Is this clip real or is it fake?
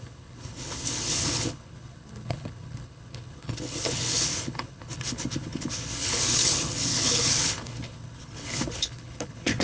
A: fake